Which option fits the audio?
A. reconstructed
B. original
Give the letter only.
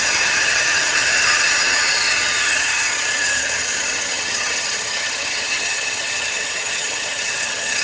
A